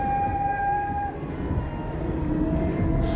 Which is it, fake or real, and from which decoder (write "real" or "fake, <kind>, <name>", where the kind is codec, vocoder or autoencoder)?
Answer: real